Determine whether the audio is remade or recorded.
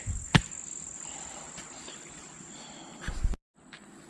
recorded